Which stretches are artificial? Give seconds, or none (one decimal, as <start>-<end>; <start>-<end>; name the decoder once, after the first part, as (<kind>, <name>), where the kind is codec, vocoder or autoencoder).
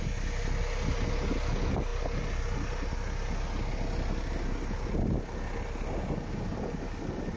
none